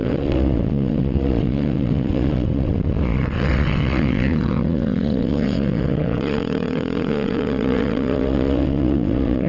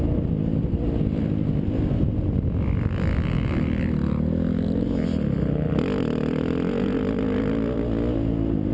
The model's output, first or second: first